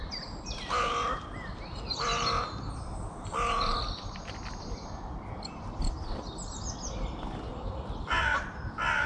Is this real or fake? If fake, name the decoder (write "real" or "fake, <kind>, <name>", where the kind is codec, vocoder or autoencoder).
real